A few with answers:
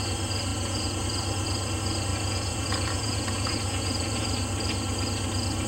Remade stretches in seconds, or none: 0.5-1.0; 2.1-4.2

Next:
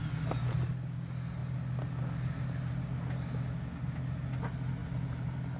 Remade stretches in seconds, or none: none

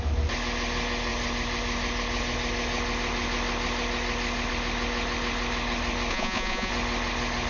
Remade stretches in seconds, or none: 6.1-6.7

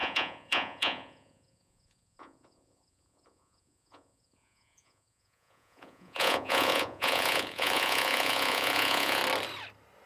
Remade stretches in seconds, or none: 0.0-9.2